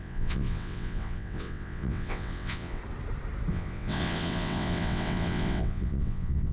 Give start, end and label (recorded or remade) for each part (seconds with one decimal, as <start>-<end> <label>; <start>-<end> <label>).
0.0-2.8 remade; 2.8-3.5 recorded; 3.5-6.5 remade